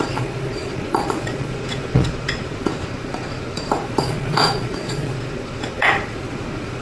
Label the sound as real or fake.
fake